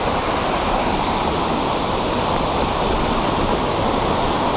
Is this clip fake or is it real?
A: real